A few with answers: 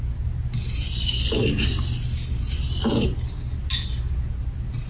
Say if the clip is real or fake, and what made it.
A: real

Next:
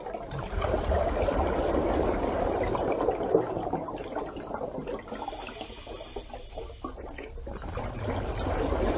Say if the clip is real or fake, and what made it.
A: real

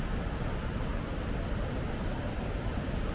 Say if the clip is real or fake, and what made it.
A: real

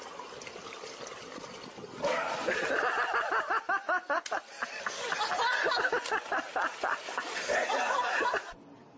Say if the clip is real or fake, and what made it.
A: real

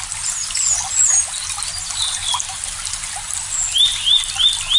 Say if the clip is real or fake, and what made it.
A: real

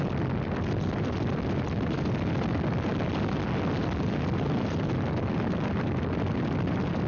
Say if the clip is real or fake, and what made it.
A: real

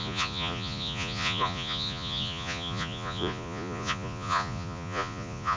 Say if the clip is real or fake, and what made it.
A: fake, vocoder, Vocos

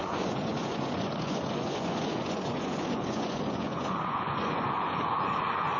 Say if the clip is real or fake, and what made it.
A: fake, vocoder, Vocos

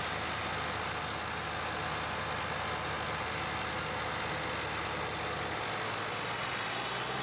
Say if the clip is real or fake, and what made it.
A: real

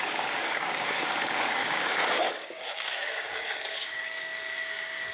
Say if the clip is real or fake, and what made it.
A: fake, codec, DAC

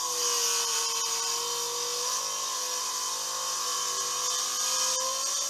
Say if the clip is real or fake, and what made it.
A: real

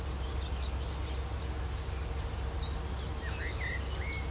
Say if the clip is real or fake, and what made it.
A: real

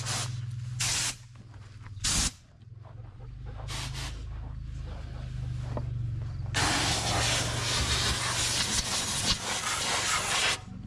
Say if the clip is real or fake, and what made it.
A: real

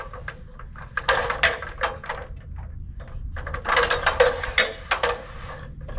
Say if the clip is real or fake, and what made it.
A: real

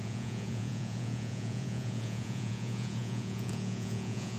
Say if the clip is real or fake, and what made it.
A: fake, vocoder, Vocos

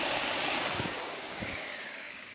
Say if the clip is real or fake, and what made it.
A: fake, codec, DAC